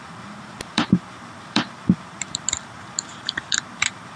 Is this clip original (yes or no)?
no